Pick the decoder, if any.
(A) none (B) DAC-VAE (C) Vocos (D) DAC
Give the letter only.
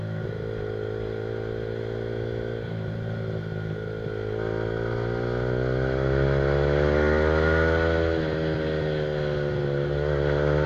A